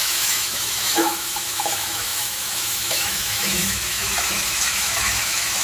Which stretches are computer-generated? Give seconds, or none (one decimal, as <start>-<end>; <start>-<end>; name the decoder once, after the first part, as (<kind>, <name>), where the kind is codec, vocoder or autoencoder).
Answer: 0.0-5.6 (autoencoder, DAC-VAE)